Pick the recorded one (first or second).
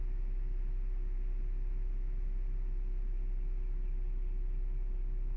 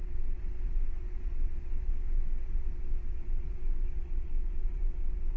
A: first